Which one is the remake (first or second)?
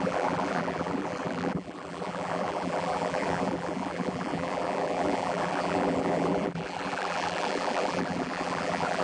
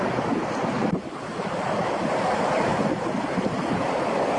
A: first